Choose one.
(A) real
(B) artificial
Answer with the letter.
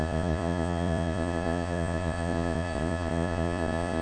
B